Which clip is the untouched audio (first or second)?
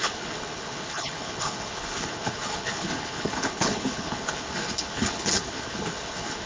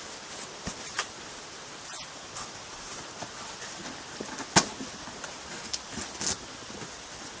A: second